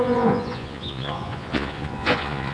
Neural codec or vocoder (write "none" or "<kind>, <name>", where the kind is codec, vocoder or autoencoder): vocoder, Vocos